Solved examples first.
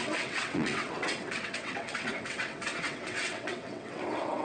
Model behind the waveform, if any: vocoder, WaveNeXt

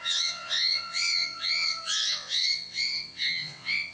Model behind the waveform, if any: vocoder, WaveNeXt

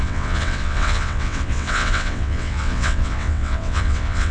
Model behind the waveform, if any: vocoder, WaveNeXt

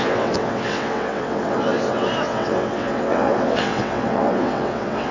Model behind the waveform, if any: vocoder, WaveNeXt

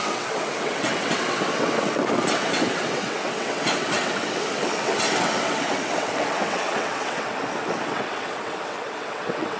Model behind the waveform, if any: vocoder, WaveNeXt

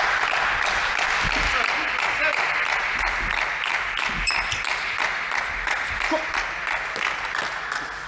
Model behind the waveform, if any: none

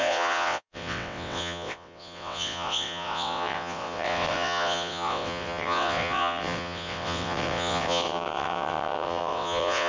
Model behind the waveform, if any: vocoder, WaveNeXt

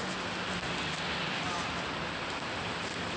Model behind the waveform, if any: none